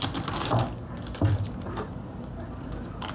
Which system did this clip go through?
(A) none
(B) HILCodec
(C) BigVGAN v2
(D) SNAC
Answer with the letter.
A